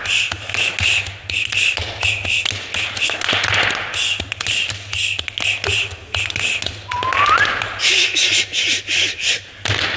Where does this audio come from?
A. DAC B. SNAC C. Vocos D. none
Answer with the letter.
D